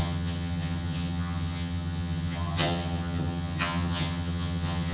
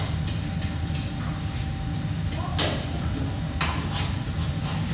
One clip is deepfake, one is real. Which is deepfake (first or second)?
first